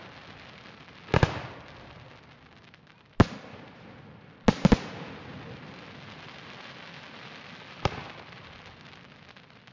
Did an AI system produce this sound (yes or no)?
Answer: no